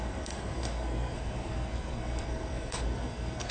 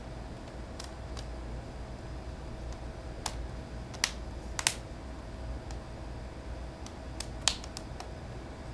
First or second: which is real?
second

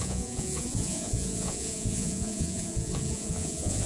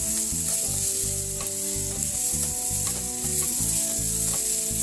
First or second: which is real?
second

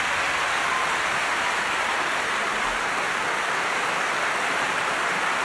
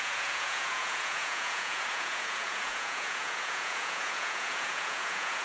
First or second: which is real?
first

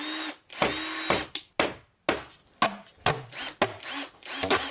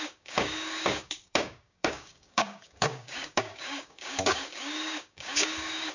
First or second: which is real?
first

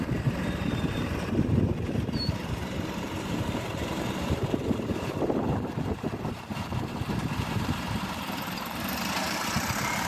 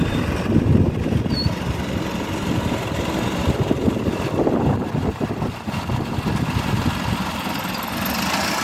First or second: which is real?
second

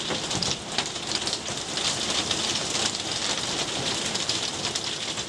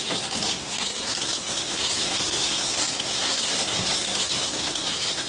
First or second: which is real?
first